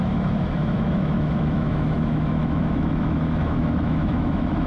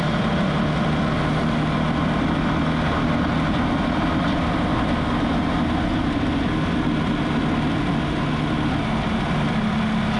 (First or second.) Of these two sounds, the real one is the second